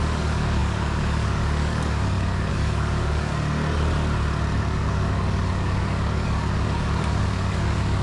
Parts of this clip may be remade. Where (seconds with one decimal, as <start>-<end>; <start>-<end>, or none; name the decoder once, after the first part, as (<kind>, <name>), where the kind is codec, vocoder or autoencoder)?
0.0-3.3 (codec, DAC); 4.6-8.0